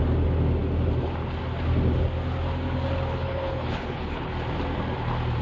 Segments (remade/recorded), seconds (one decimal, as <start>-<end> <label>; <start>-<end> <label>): 0.0-3.1 recorded; 3.1-4.3 remade; 4.3-5.4 recorded